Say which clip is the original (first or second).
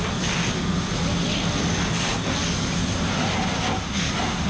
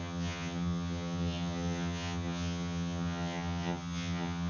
first